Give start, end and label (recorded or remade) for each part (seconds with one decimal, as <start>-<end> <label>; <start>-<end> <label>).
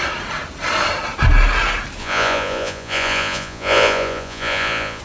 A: 0.0-2.0 recorded; 2.0-5.0 remade